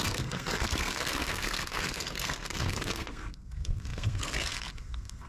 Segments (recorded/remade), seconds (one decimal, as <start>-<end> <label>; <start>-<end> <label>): 0.0-5.3 remade